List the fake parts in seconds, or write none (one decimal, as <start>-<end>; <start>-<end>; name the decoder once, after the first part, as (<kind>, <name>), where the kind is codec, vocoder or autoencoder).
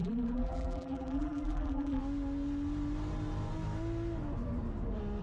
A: 0.0-2.0 (vocoder, BigVGAN v2)